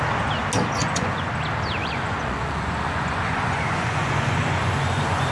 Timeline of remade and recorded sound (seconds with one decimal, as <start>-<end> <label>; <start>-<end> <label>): 0.0-0.8 recorded; 0.8-1.3 remade; 1.3-1.8 recorded; 1.8-5.3 remade